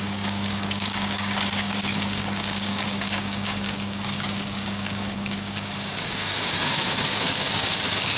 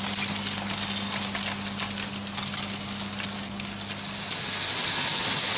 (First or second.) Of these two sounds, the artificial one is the first